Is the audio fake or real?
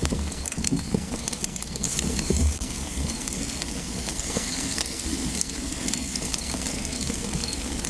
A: fake